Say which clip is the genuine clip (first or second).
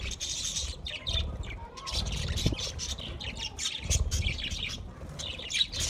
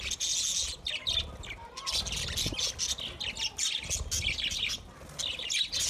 second